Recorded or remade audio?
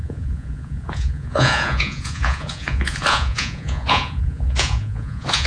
remade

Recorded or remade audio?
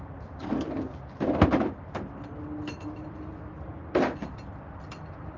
recorded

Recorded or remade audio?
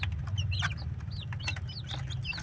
recorded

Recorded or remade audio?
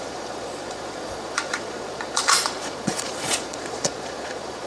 remade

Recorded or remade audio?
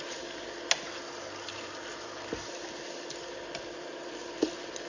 recorded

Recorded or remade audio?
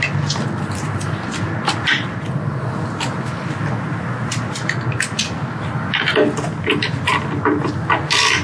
recorded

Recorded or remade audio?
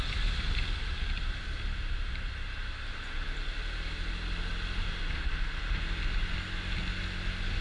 recorded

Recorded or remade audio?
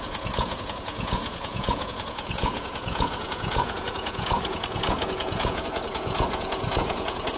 remade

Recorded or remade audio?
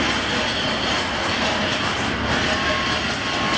recorded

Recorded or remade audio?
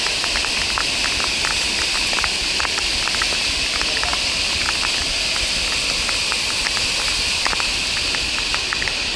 recorded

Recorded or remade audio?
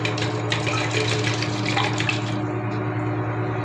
recorded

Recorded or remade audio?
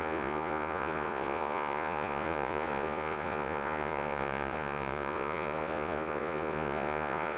remade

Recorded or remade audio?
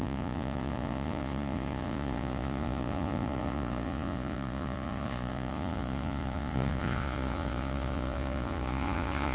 remade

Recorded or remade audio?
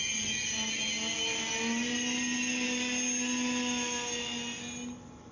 recorded